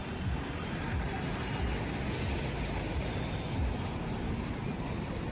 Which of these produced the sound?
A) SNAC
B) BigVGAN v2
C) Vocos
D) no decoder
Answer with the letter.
D